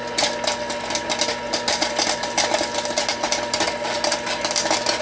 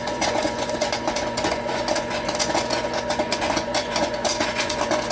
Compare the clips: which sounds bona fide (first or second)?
first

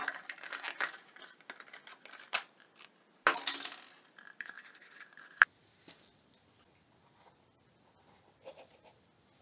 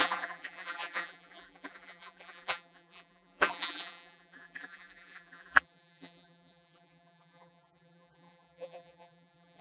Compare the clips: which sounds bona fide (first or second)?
first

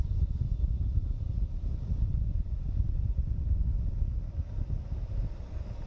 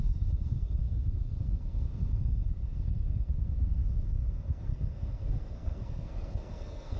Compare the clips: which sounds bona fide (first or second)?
first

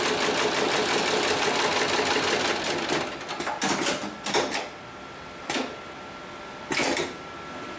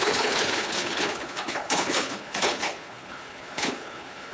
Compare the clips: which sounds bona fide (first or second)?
first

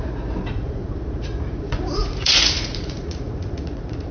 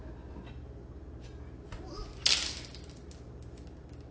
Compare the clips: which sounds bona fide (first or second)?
second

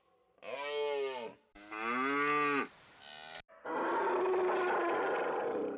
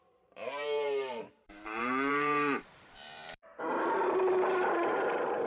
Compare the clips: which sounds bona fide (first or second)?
first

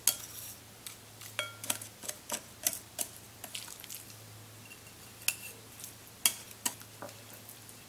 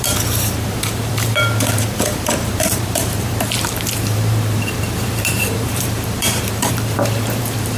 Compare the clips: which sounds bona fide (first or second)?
first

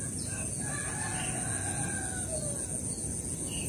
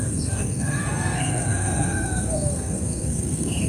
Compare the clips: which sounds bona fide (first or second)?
first